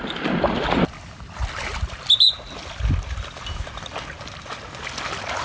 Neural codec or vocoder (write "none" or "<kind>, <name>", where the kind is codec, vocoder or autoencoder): none